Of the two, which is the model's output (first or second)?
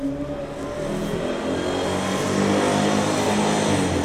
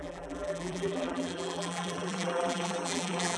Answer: second